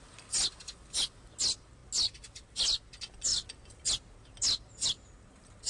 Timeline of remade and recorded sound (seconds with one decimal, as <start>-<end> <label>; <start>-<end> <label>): 0.0-5.7 recorded